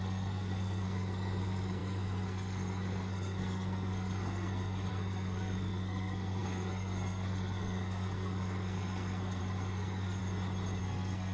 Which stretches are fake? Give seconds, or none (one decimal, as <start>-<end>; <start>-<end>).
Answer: 0.0-10.2; 10.8-11.3